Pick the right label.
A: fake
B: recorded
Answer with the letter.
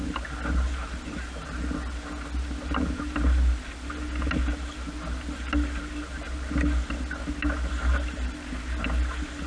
B